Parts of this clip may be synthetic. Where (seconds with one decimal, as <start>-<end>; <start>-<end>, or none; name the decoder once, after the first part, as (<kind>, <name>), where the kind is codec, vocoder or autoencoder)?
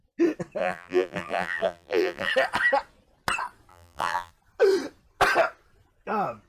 0.6-2.3 (vocoder, BigVGAN v2); 3.7-4.3